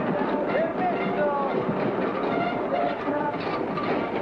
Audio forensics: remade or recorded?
recorded